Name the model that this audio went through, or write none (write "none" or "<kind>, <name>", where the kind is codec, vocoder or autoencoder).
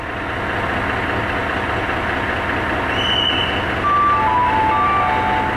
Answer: none